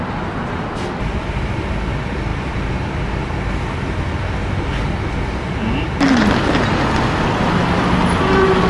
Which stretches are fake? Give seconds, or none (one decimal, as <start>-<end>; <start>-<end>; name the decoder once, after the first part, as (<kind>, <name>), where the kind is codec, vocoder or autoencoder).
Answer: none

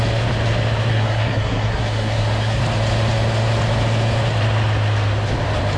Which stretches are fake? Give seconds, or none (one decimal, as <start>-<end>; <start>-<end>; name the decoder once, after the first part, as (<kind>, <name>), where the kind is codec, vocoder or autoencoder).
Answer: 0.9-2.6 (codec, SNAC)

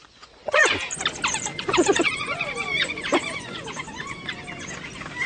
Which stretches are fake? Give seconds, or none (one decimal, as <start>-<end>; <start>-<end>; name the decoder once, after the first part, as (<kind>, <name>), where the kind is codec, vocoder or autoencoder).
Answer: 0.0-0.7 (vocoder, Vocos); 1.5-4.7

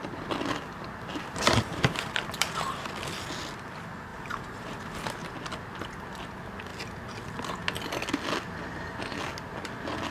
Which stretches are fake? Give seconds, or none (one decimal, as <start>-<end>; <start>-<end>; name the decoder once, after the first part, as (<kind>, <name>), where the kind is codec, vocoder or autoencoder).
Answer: 1.1-2.9 (vocoder, BigVGAN v2); 4.1-4.9

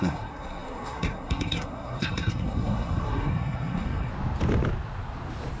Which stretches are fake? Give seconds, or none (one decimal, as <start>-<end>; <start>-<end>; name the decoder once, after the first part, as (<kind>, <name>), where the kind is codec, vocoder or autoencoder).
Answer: 0.0-4.1 (codec, SNAC)

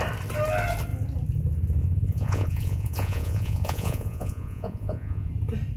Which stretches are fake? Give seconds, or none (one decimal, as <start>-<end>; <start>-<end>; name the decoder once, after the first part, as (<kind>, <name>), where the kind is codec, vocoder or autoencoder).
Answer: 1.8-5.3 (vocoder, Vocos)

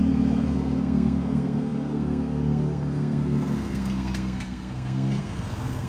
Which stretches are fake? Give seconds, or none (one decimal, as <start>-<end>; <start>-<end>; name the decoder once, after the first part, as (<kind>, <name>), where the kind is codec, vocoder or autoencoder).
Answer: 0.0-5.9 (codec, SNAC)